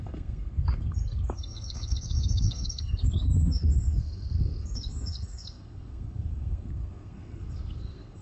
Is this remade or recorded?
remade